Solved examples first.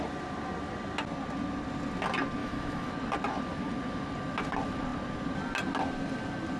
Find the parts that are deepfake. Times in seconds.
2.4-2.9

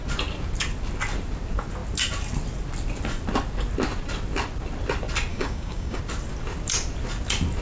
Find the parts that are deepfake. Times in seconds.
5.3-6.0

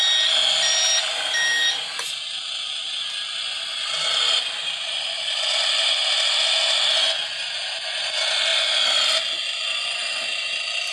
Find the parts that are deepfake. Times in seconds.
none

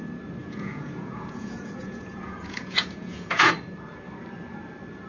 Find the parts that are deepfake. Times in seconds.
0.4-3.5